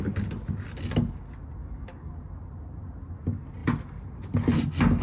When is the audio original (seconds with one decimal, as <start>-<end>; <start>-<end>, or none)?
0.0-1.6; 2.1-5.0